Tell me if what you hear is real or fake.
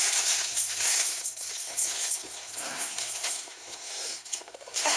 fake